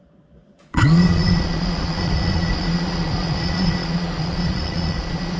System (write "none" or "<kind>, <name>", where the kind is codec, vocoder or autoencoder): vocoder, Vocos